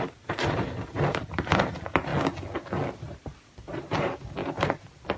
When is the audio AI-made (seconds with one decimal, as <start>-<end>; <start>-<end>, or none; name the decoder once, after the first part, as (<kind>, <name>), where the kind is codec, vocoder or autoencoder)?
0.0-2.1 (vocoder, BigVGAN v2); 3.0-5.2